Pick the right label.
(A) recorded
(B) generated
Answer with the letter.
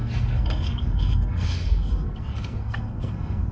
B